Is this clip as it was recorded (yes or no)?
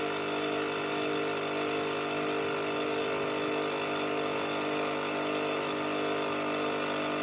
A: yes